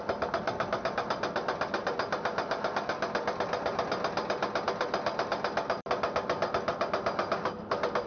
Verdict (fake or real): real